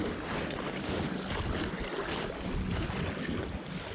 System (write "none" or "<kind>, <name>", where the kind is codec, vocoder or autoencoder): none